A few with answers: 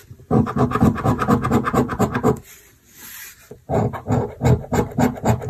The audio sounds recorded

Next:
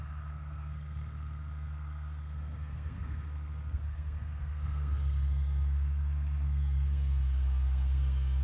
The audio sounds remade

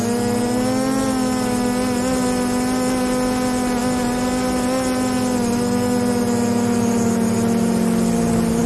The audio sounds recorded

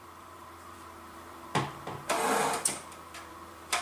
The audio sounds remade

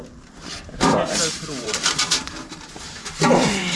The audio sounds remade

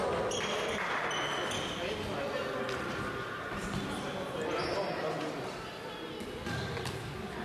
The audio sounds recorded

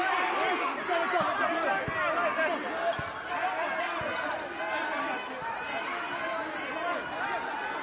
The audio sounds recorded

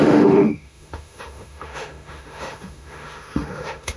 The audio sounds remade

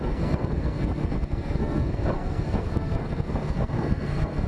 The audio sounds remade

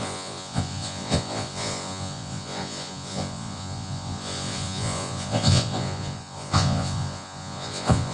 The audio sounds remade